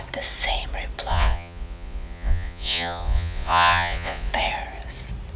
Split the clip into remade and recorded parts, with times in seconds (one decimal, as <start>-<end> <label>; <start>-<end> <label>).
0.0-1.1 recorded; 1.1-4.3 remade; 4.3-5.4 recorded